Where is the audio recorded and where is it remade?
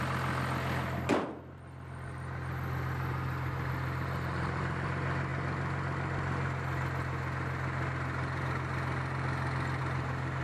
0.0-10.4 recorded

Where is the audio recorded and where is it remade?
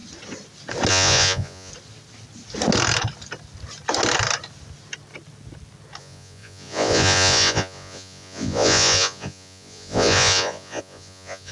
0.0-0.9 recorded; 0.9-1.7 remade; 1.7-6.0 recorded; 6.0-11.5 remade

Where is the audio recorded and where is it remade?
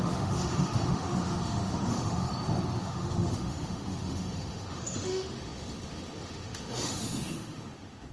0.0-2.3 remade; 2.3-2.8 recorded; 2.8-8.1 remade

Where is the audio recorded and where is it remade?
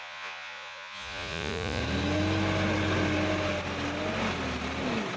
0.0-1.8 remade; 1.8-5.2 recorded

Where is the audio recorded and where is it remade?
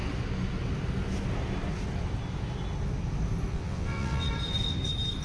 0.0-3.5 recorded; 3.5-4.3 remade; 4.3-5.2 recorded